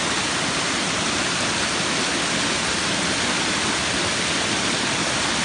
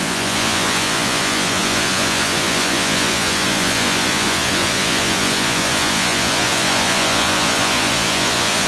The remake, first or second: second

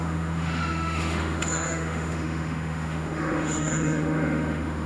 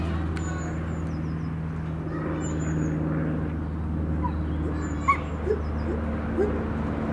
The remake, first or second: first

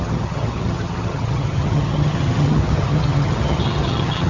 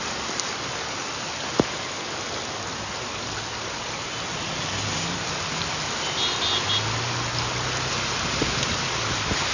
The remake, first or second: first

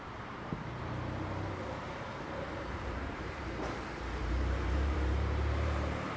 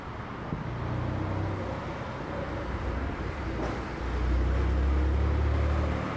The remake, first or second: first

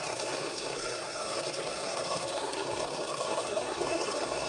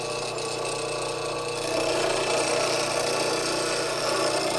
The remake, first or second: first